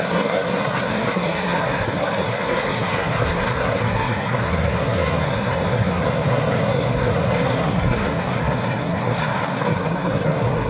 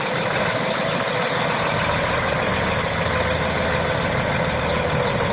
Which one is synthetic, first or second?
first